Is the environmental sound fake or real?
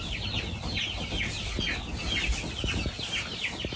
real